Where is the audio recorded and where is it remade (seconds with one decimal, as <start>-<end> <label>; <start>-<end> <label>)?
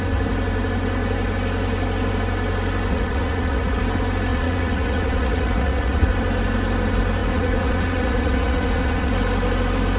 0.0-2.9 recorded; 2.9-3.8 remade; 3.8-4.3 recorded; 4.3-6.1 remade; 6.1-7.2 recorded; 7.2-9.1 remade; 9.1-10.0 recorded